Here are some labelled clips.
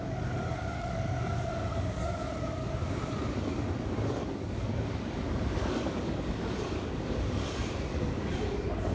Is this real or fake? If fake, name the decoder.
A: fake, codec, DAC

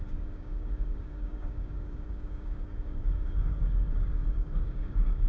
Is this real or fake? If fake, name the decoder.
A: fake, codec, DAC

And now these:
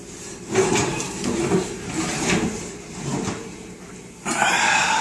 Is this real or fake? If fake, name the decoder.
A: fake, vocoder, BigVGAN v2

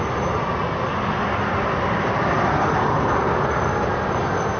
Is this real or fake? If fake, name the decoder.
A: real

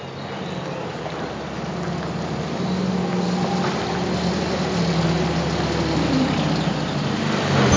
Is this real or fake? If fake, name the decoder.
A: real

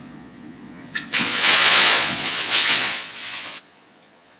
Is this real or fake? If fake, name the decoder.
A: fake, vocoder, Vocos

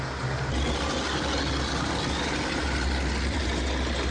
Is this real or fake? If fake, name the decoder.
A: real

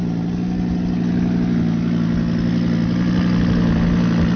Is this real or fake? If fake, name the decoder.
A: real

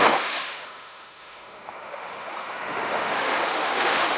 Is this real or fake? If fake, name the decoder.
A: fake, autoencoder, DAC-VAE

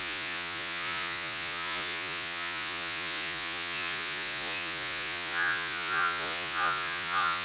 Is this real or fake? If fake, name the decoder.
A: fake, vocoder, Vocos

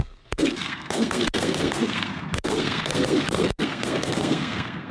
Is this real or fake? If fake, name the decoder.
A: fake, codec, SNAC